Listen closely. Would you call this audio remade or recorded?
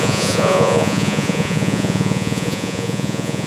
remade